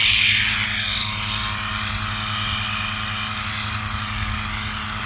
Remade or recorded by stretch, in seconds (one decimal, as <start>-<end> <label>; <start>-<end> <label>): 0.0-5.1 recorded